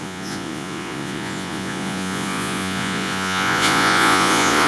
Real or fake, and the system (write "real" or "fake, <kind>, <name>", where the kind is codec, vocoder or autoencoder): fake, vocoder, Vocos